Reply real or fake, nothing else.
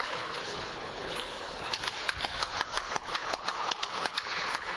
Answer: fake